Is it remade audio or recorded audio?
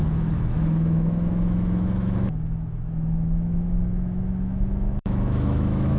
remade